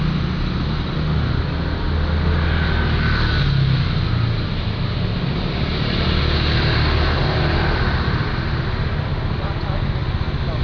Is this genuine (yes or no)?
yes